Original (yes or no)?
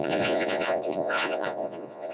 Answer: no